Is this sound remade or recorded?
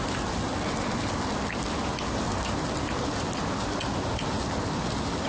recorded